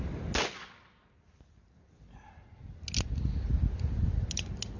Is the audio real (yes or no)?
yes